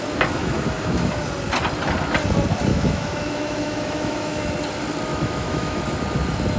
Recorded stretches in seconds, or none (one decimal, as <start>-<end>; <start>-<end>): 0.0-0.4; 1.0-2.7; 4.4-5.1; 5.8-6.6